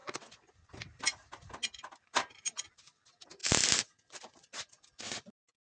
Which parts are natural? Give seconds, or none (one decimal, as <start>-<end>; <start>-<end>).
0.5-5.6